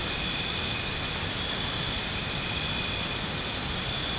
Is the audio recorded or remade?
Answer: recorded